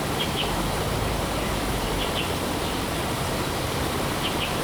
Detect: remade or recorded remade